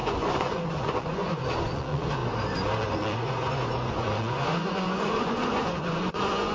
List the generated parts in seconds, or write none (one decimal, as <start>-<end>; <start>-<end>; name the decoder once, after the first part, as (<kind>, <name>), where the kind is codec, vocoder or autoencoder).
0.0-2.2 (vocoder, Vocos); 2.8-6.5